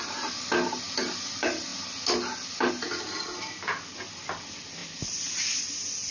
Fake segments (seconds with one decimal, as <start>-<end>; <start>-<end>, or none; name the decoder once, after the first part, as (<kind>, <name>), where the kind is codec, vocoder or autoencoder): none